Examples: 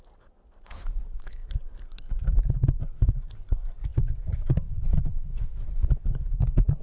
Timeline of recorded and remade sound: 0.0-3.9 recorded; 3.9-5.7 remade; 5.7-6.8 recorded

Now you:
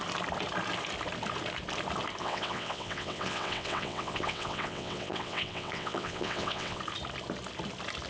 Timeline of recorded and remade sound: 0.0-2.2 recorded; 2.2-6.8 remade; 6.8-8.1 recorded